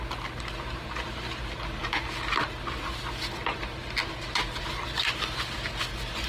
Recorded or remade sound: recorded